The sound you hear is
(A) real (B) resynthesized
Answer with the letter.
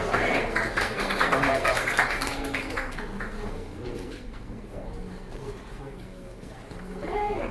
B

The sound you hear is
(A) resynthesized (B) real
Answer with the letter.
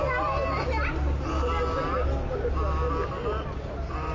B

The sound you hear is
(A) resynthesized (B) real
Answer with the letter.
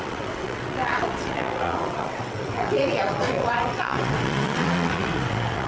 A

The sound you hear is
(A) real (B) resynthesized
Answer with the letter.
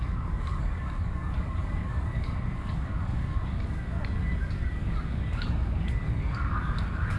B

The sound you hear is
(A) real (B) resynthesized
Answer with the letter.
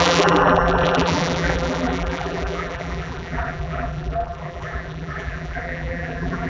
B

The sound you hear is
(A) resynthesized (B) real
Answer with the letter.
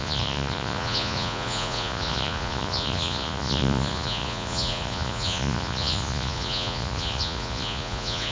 A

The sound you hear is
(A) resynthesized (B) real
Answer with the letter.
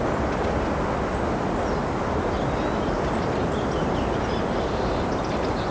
B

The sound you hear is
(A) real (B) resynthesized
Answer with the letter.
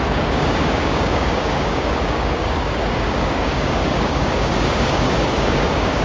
B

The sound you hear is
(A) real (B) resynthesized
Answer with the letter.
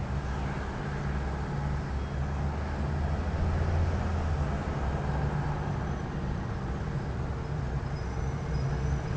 A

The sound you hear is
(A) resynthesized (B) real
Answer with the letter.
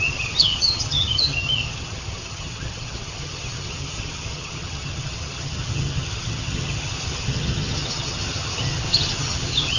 A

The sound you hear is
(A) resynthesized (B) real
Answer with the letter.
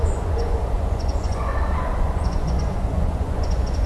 A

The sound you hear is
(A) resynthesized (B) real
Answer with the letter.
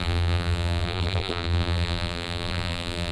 A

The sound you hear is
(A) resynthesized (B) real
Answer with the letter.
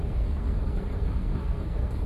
A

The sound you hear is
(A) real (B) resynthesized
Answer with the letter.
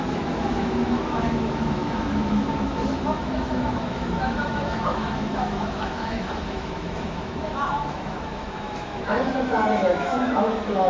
B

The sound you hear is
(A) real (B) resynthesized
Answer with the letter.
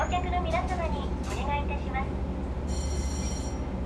A